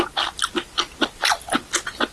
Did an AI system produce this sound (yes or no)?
no